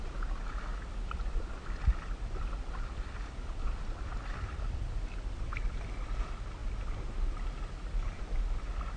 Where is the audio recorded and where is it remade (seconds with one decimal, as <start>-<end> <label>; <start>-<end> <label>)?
0.0-0.7 recorded; 0.7-5.9 remade; 5.9-9.0 recorded